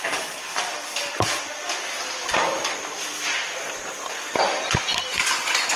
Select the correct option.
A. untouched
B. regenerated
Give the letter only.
B